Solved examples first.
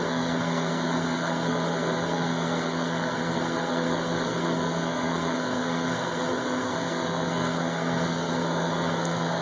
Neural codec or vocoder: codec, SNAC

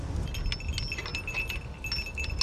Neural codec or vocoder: none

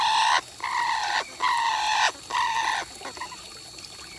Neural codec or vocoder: none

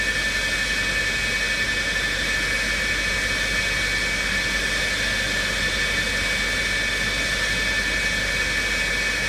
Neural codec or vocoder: none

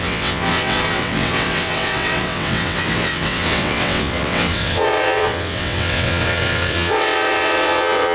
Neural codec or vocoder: vocoder, WaveNeXt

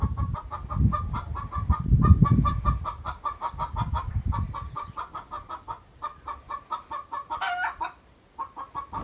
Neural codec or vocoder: none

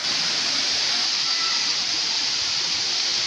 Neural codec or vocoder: none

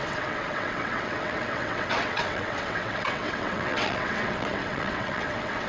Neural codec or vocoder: vocoder, WaveNeXt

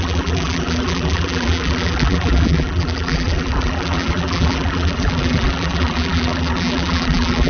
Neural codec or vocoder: vocoder, BigVGAN v2